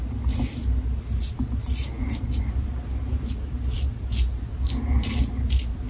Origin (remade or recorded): recorded